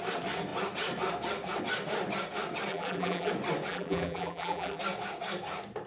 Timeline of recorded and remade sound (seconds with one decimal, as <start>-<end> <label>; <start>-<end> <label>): 0.0-2.7 recorded; 2.7-3.3 remade; 3.3-3.7 recorded; 3.7-4.8 remade; 4.8-5.9 recorded